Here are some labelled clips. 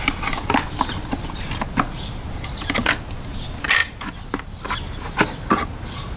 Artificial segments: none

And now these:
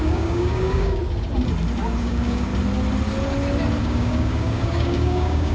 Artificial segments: 0.0-1.0 (codec, DAC); 2.0-2.5; 3.8-5.5

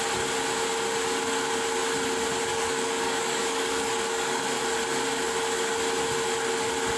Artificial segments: 2.5-4.4 (codec, DAC)

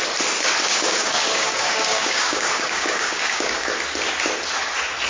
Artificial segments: 0.6-3.7 (codec, DAC)

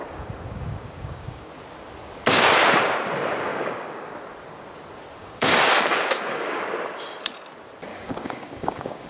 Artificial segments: 0.0-1.5 (codec, DAC); 3.5-4.1; 5.2-6.6; 7.9-9.1

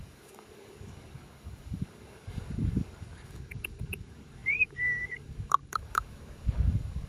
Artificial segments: 0.0-7.1 (codec, DAC)

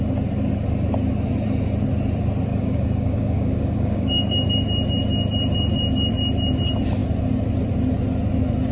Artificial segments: 2.5-4.5 (codec, DAC)

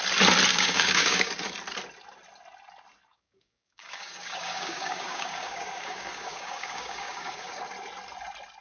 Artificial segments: 0.5-1.3 (codec, DAC); 3.1-7.6